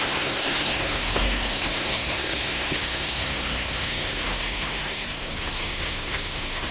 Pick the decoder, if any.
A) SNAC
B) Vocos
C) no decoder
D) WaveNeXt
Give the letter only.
A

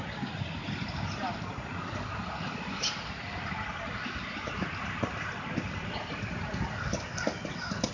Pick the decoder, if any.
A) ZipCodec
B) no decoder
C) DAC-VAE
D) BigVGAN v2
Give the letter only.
B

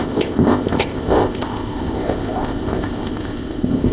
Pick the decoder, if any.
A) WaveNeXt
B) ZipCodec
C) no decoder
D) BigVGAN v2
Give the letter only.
B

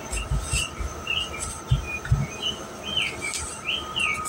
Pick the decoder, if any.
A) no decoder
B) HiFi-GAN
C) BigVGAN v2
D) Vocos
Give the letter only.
A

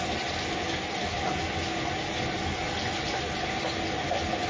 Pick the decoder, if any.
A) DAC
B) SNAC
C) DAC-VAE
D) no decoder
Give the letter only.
D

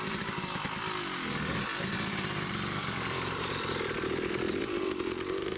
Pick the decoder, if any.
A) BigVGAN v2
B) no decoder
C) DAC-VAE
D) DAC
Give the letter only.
A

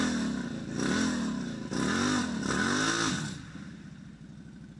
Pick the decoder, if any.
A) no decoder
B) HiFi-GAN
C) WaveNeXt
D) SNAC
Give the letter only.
A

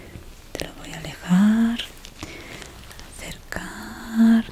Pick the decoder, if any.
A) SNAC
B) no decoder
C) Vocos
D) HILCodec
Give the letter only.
B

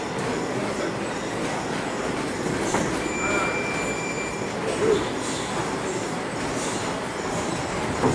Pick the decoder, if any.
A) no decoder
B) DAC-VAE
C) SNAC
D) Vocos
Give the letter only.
A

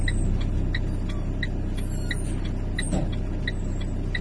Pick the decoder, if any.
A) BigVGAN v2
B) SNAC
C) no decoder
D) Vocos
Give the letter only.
C